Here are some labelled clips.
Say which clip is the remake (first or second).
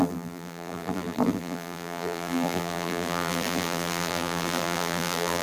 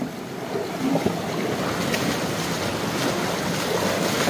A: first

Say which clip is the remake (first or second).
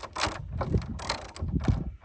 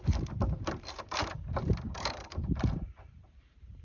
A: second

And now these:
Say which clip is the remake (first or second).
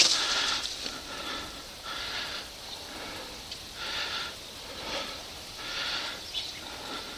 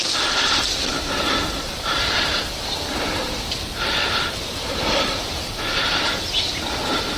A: second